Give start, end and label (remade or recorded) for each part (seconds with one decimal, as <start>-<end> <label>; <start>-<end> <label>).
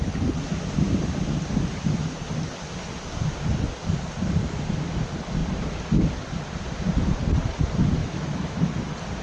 0.0-8.0 recorded; 8.0-8.6 remade; 8.6-9.2 recorded